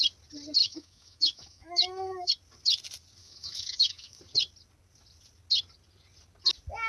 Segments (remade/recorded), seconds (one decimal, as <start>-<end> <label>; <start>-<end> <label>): 0.0-0.6 recorded; 0.6-2.3 remade; 2.3-3.2 recorded; 3.2-4.2 remade; 4.2-6.9 recorded